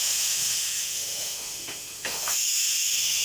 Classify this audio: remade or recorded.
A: remade